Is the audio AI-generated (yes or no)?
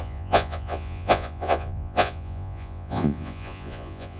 yes